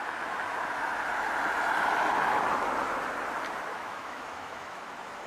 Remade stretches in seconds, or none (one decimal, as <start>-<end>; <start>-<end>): 3.7-4.8